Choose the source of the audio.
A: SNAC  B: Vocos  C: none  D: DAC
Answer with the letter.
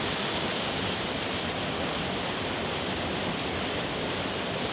C